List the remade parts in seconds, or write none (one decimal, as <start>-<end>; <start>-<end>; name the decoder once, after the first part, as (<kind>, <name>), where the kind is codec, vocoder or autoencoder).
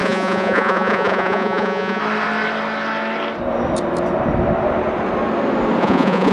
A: 0.0-2.0 (vocoder, Vocos); 5.8-6.3